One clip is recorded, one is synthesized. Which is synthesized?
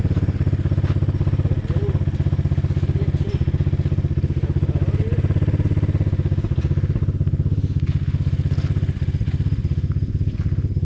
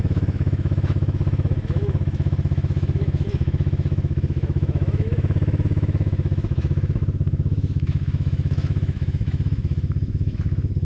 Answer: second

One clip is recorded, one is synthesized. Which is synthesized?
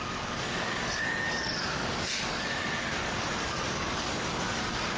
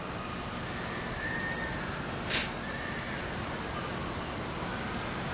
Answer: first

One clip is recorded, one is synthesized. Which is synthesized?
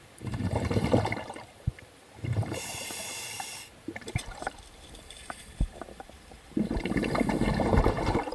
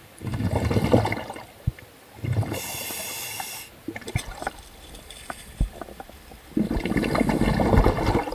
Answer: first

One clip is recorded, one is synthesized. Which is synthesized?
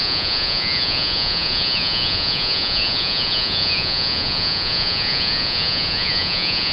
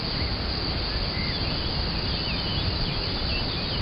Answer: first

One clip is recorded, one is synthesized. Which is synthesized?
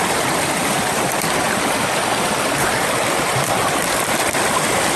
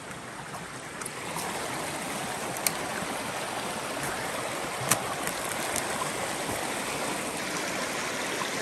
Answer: first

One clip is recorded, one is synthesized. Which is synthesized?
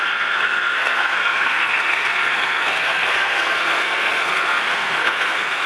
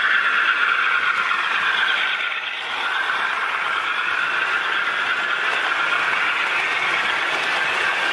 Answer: first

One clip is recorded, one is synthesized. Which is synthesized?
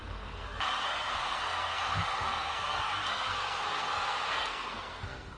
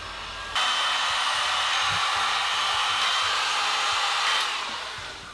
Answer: first